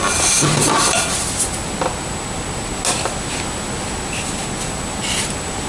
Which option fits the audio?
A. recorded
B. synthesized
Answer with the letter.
A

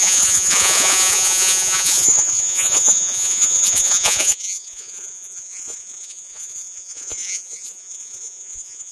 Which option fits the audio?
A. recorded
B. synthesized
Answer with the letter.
B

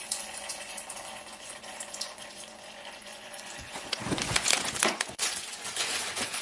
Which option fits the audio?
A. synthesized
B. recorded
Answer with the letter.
A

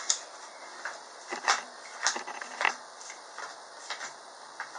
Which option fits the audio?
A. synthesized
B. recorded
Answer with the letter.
B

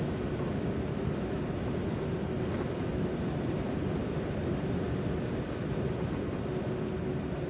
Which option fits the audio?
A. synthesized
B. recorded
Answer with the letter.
B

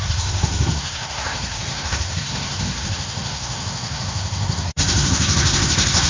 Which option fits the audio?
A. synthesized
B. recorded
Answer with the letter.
A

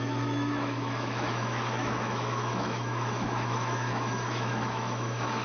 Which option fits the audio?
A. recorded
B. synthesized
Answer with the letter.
B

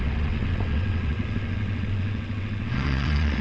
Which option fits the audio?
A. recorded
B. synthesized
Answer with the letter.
B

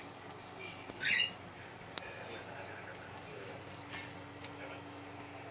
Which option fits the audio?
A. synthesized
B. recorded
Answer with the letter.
B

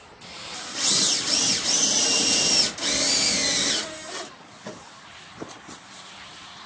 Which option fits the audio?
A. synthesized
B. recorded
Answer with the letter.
B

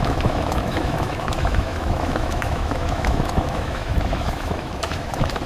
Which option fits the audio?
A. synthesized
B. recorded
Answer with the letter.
A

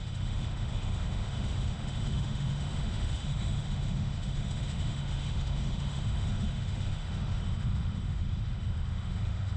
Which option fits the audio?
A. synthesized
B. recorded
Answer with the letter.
A